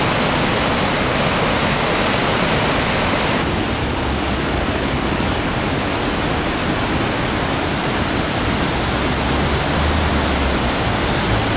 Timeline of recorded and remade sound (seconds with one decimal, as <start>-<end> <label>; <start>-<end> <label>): 0.0-3.8 recorded; 3.8-5.5 remade; 5.5-11.6 recorded